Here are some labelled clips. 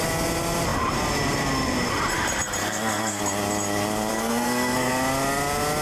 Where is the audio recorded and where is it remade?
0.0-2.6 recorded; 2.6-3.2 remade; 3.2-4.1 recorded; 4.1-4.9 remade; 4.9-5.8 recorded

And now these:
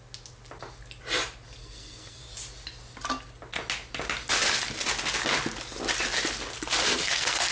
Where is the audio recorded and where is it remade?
0.0-1.6 recorded; 1.6-2.2 remade; 2.2-6.8 recorded; 6.8-7.5 remade

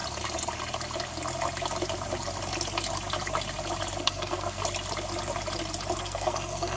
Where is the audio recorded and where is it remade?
0.0-4.0 recorded; 4.0-4.6 remade; 4.6-6.0 recorded; 6.0-6.8 remade

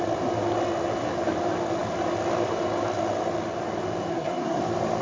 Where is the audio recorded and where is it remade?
0.0-4.1 recorded; 4.1-4.6 remade; 4.6-5.0 recorded

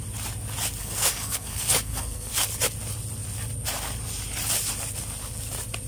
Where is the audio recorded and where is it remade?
0.0-0.8 recorded; 0.8-2.3 remade; 2.3-5.9 recorded

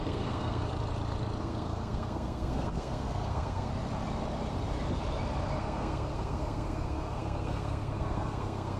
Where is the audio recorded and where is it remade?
0.0-0.7 remade; 0.7-1.4 recorded; 1.4-3.7 remade; 3.7-5.6 recorded; 5.6-8.8 remade

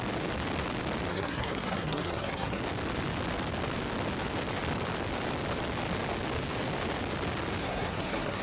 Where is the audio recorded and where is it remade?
0.0-1.1 recorded; 1.1-2.6 remade; 2.6-7.6 recorded; 7.6-8.4 remade